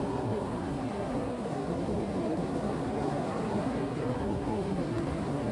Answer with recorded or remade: remade